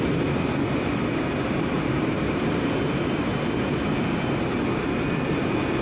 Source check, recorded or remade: remade